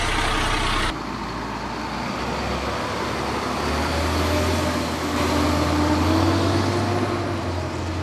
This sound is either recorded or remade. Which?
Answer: recorded